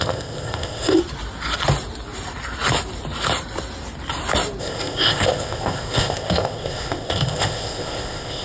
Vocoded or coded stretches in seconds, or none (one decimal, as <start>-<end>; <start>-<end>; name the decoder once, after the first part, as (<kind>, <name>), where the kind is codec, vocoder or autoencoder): 0.0-1.0 (codec, ZipCodec); 4.6-8.4